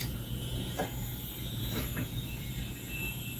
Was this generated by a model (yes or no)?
yes